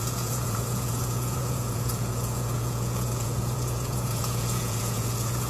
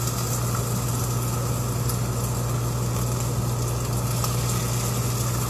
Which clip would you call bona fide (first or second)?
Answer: second